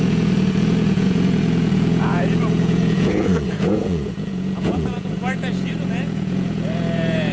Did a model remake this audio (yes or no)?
yes